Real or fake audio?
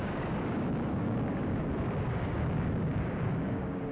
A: fake